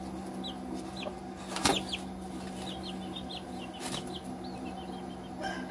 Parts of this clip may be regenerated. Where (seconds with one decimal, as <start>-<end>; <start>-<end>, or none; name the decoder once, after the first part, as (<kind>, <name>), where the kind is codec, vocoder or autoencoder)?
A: none